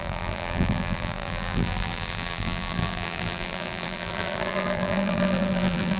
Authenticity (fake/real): fake